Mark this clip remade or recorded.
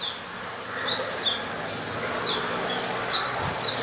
recorded